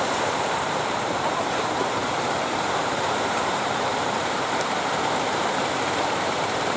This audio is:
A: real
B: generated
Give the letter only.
B